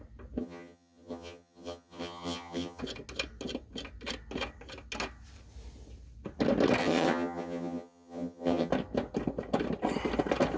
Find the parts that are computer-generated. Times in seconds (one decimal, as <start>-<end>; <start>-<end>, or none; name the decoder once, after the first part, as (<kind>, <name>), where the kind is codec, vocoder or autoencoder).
0.4-2.8 (vocoder, HiFi-GAN); 6.8-8.7